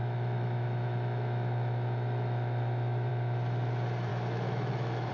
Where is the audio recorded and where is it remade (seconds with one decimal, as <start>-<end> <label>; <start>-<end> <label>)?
0.0-3.1 remade; 3.1-4.1 recorded; 4.1-5.1 remade